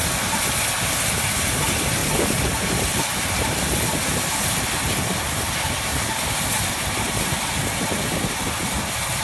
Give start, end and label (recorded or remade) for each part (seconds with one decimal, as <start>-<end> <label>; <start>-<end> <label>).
0.0-2.0 recorded; 2.0-5.2 remade; 5.2-5.9 recorded; 5.9-7.1 remade; 7.1-9.2 recorded

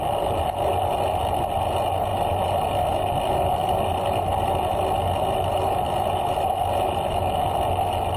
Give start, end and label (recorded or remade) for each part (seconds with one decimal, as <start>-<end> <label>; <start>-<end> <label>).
0.0-8.2 recorded

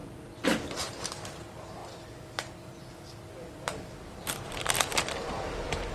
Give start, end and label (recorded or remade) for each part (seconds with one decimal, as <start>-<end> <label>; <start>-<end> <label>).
0.0-0.8 recorded; 0.8-1.8 remade; 1.8-4.0 recorded; 4.0-5.9 remade

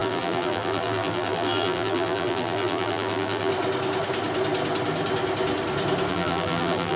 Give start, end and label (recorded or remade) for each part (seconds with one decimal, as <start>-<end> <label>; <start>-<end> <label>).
0.0-3.5 remade; 3.5-6.1 recorded; 6.1-7.0 remade